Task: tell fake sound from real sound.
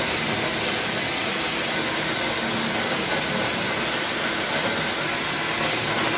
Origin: real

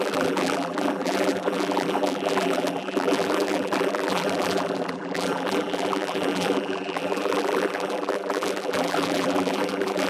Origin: fake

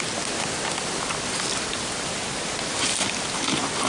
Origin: fake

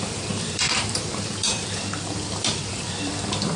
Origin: fake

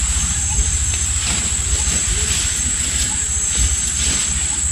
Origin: fake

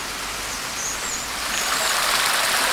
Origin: real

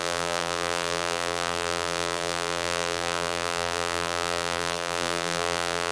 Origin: fake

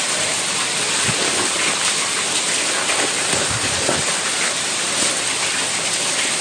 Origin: fake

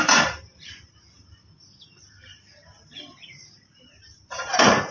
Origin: fake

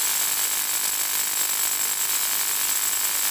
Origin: fake